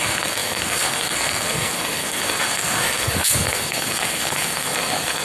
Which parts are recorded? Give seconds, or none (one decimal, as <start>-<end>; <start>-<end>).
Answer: none